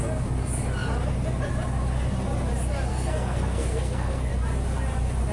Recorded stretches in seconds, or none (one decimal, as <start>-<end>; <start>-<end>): 0.0-2.9; 4.3-5.3

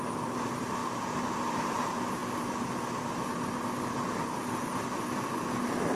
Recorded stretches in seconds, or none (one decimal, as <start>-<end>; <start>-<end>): 0.0-6.0